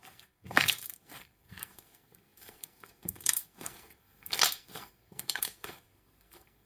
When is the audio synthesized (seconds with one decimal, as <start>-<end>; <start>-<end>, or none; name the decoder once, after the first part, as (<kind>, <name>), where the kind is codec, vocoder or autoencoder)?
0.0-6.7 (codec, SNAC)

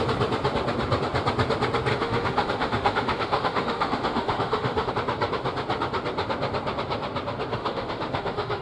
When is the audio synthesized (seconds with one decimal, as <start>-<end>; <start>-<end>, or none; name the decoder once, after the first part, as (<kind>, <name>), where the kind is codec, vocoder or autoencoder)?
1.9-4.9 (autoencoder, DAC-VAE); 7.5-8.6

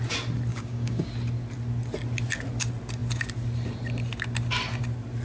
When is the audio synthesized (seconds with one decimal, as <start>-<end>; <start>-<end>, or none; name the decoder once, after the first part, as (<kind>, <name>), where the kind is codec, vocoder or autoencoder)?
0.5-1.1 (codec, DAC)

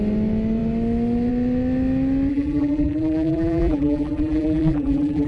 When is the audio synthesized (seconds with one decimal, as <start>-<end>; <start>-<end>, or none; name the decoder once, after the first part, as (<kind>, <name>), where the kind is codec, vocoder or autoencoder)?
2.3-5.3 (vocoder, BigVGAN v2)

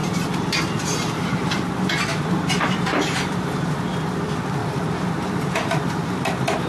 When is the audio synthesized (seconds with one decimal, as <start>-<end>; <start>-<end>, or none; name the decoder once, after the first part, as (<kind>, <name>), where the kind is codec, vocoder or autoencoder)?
0.0-4.0 (vocoder, BigVGAN v2); 4.6-6.7